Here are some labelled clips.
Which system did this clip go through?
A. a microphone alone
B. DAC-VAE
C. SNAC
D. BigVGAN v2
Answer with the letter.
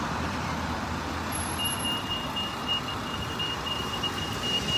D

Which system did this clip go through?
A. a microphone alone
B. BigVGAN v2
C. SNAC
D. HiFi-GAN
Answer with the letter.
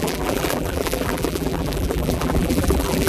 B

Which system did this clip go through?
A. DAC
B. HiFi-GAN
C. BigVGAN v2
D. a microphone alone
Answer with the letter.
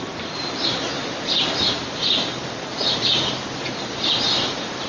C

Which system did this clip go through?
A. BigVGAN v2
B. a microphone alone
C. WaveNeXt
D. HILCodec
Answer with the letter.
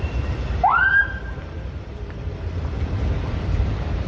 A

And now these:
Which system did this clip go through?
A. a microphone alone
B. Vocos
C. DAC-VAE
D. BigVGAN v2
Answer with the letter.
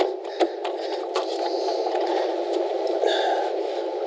A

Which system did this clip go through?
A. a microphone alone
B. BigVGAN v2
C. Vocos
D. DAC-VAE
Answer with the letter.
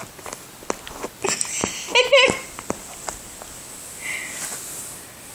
A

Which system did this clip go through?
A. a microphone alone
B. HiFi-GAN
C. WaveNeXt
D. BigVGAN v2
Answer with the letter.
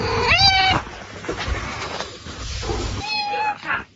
A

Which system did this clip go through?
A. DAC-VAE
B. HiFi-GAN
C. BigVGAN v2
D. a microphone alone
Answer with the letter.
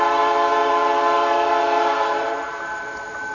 C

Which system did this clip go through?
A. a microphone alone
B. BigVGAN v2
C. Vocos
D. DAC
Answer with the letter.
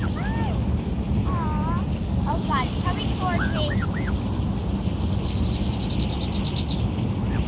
A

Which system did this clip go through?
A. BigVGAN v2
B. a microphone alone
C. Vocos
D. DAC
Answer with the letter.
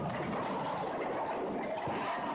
B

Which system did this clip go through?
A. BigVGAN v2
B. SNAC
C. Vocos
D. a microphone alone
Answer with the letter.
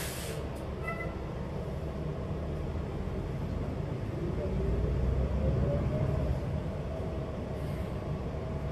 D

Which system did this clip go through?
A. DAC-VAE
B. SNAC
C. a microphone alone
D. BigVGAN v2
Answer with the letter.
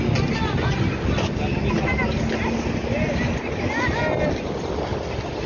C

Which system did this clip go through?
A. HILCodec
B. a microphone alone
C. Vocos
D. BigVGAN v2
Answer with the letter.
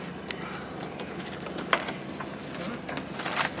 B